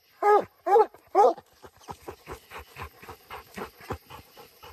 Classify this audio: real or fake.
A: fake